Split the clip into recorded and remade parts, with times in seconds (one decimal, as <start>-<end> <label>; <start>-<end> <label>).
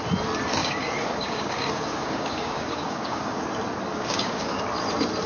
0.0-0.6 recorded; 0.6-3.4 remade; 3.4-3.9 recorded; 3.9-4.6 remade; 4.6-5.3 recorded